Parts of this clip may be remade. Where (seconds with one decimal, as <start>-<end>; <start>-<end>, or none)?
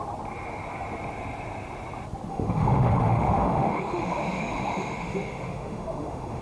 2.3-6.4